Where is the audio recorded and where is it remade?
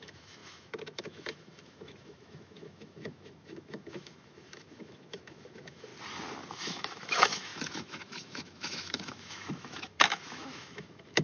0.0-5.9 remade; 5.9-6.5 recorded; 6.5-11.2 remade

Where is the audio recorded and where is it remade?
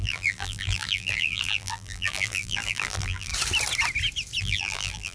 0.0-3.3 remade; 3.3-4.4 recorded; 4.4-5.1 remade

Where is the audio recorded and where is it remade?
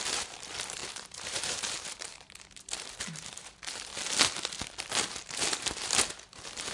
0.0-3.9 remade; 3.9-5.2 recorded; 5.2-6.7 remade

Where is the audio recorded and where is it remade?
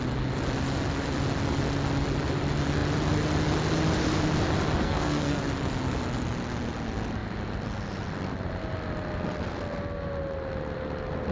0.0-4.8 recorded; 4.8-5.4 remade; 5.4-11.3 recorded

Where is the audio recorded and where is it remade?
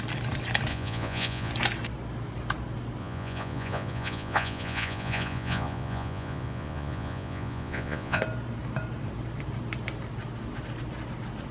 0.0-0.7 recorded; 0.7-1.5 remade; 1.5-3.0 recorded; 3.0-8.2 remade; 8.2-11.5 recorded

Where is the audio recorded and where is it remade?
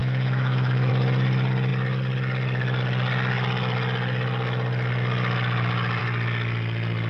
0.0-0.9 remade; 0.9-7.1 recorded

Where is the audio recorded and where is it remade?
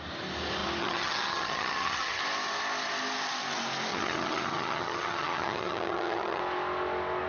0.0-0.8 recorded; 0.8-2.2 remade; 2.2-3.9 recorded; 3.9-6.4 remade; 6.4-7.3 recorded